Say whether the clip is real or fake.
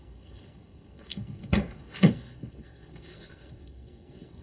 fake